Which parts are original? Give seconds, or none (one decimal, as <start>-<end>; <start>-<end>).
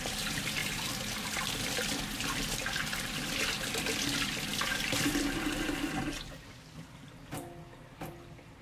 0.0-0.6; 2.0-4.5; 5.1-8.6